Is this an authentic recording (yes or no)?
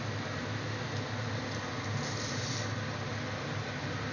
yes